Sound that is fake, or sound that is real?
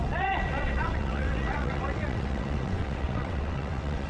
fake